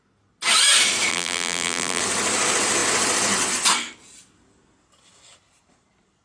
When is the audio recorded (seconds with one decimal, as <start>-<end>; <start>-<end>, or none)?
0.0-1.1; 2.0-6.2